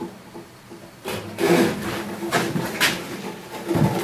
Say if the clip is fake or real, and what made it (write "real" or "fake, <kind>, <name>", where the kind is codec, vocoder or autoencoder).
real